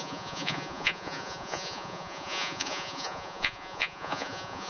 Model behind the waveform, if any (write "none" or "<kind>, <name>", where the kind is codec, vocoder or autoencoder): vocoder, Vocos